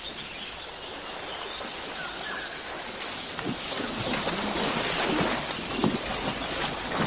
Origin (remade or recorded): recorded